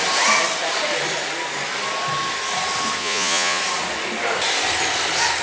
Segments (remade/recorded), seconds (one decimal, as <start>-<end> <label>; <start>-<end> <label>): 0.0-3.0 recorded; 3.0-3.6 remade; 3.6-5.4 recorded